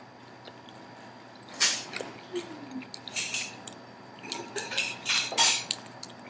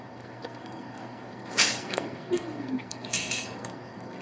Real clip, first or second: first